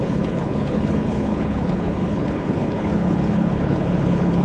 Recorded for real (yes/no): no